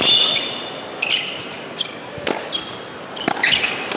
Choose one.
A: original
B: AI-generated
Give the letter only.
A